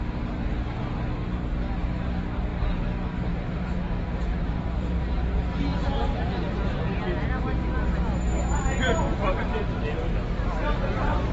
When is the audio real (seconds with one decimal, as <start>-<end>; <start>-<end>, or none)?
0.0-4.3; 5.0-5.7; 6.8-11.3